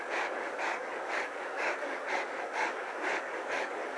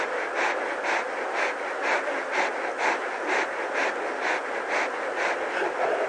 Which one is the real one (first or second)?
second